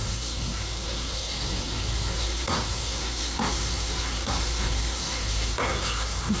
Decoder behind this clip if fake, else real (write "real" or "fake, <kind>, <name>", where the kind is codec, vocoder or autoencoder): fake, codec, SNAC